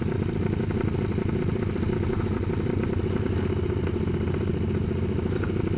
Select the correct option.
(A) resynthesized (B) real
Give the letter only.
B